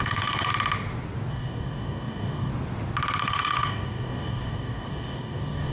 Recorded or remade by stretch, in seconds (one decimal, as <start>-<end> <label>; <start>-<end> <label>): 0.0-0.5 remade; 0.5-1.3 recorded; 1.3-2.5 remade; 2.5-3.2 recorded; 3.2-5.7 remade